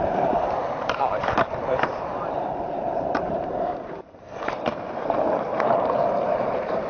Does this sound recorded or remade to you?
remade